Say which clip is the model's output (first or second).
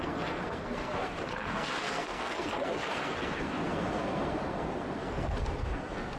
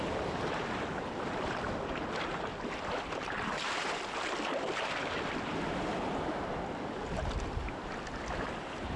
first